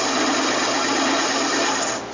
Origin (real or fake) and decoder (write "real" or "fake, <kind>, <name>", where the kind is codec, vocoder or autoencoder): real